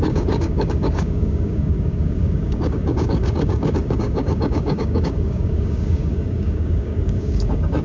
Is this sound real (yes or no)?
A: no